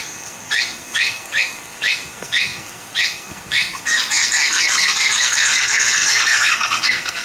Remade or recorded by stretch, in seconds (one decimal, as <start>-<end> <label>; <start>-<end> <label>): 0.0-7.2 remade